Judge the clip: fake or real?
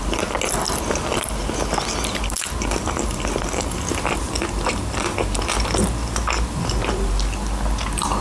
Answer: real